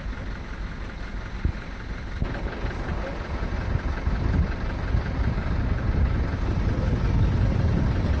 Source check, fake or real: fake